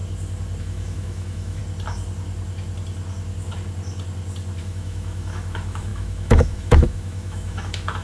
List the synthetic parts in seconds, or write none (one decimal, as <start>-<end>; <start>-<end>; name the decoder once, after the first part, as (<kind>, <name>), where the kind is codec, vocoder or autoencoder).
0.6-1.6 (autoencoder, DAC-VAE); 4.6-8.0